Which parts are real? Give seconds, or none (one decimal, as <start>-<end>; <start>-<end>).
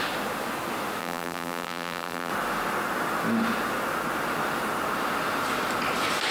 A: 0.0-1.0; 2.3-6.3